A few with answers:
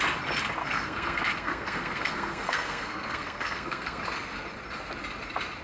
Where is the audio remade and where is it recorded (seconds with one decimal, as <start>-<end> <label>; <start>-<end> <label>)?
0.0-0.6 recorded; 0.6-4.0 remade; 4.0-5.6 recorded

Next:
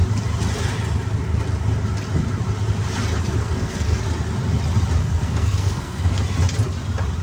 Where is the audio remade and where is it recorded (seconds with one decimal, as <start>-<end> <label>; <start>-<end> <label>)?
0.0-3.4 recorded; 3.4-4.0 remade; 4.0-5.0 recorded; 5.0-6.2 remade; 6.2-7.2 recorded

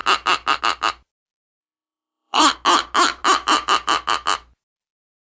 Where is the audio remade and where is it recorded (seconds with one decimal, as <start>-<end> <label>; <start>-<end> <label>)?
0.0-1.6 recorded; 1.6-2.5 remade; 2.5-5.2 recorded

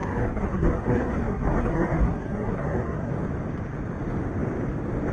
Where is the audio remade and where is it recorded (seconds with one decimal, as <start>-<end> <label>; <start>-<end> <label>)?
0.0-3.1 remade; 3.1-5.1 recorded

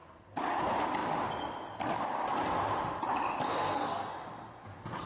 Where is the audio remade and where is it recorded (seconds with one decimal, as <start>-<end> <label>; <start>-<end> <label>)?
0.0-3.5 recorded; 3.5-4.1 remade; 4.1-5.1 recorded

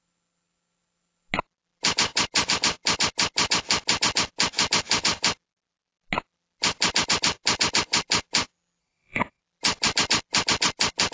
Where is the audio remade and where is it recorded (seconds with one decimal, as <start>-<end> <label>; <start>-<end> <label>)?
0.0-8.8 recorded; 8.8-9.4 remade; 9.4-11.1 recorded

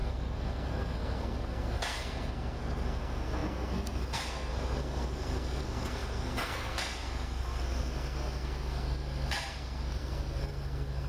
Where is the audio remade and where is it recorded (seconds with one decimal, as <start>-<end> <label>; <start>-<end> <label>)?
0.0-11.1 remade

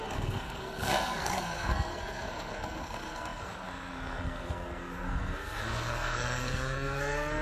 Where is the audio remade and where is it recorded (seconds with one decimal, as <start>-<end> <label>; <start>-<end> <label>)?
0.0-7.4 remade